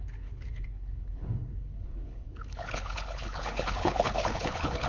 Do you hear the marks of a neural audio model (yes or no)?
yes